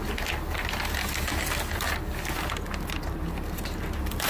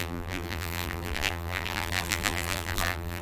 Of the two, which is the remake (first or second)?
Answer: second